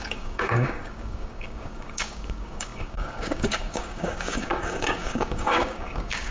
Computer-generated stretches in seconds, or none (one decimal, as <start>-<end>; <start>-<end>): 0.0-6.3